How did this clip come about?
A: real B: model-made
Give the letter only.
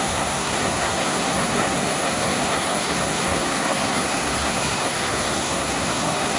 B